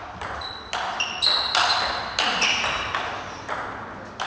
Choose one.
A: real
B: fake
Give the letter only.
A